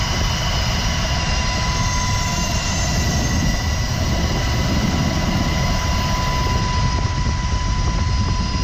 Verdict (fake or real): real